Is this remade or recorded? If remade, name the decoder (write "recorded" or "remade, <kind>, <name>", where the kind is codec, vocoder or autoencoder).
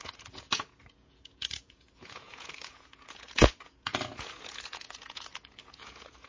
remade, vocoder, Vocos